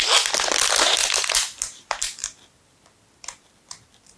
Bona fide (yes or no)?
yes